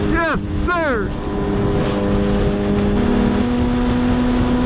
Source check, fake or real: real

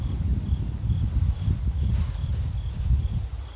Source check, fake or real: real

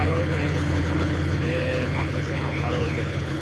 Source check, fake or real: fake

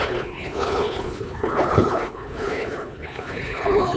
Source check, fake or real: fake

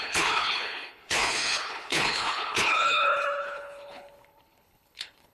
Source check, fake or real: fake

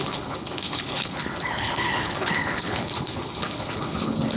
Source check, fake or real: fake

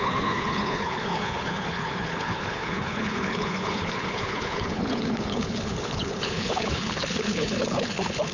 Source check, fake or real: fake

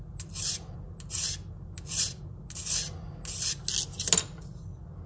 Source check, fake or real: real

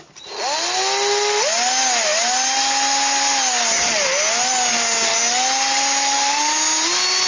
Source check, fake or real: real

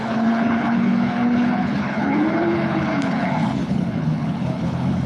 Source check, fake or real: fake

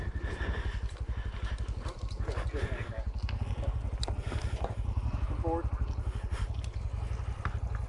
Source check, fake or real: real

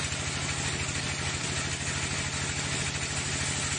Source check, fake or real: real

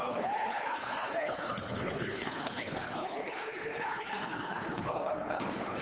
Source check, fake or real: fake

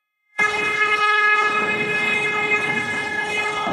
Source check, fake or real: fake